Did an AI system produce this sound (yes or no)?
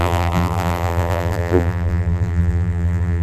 yes